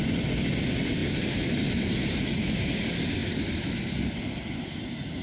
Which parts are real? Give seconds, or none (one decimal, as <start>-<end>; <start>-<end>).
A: 0.0-5.2